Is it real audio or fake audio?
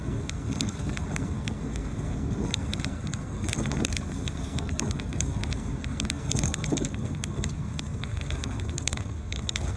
fake